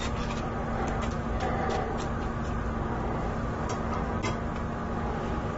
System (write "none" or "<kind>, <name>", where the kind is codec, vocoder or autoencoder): none